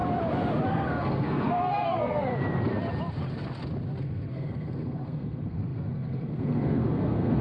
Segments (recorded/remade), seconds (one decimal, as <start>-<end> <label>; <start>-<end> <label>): 0.0-0.7 recorded; 0.7-2.3 remade; 2.3-4.0 recorded; 4.0-7.4 remade